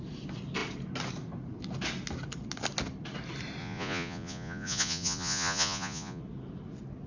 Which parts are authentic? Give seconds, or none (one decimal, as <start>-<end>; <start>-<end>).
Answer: 0.0-3.6; 6.2-7.1